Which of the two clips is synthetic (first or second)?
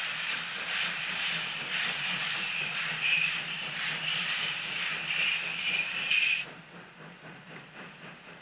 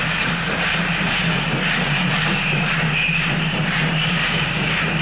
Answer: first